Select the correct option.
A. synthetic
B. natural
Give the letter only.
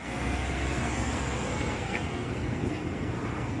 A